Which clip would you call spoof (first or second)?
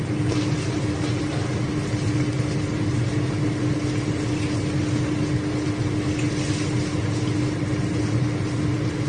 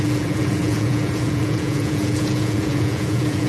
second